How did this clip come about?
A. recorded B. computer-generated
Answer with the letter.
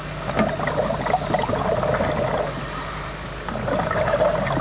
A